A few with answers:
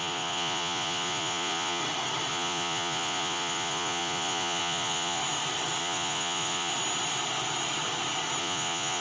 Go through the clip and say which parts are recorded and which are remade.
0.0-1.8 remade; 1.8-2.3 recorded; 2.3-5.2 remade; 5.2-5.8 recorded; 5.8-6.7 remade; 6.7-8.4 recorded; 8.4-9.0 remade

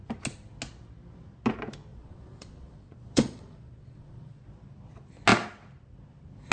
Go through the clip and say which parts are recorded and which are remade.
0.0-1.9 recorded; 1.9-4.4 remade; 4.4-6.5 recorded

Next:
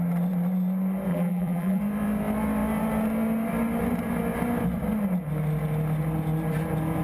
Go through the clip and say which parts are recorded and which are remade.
0.0-1.1 recorded; 1.1-1.8 remade; 1.8-7.0 recorded